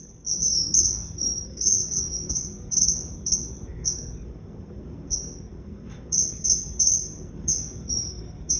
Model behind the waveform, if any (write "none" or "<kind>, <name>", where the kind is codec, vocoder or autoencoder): codec, SNAC